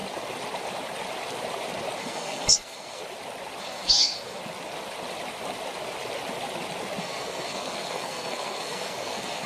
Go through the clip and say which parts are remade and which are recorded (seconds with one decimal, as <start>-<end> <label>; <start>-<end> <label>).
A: 0.0-2.0 recorded; 2.0-3.0 remade; 3.0-3.6 recorded; 3.6-4.4 remade; 4.4-7.0 recorded; 7.0-9.5 remade